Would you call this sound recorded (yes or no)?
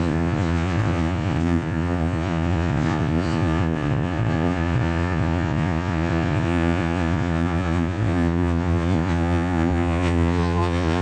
no